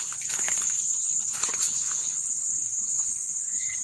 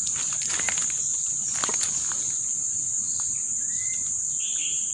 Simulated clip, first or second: first